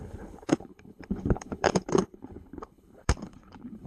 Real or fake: fake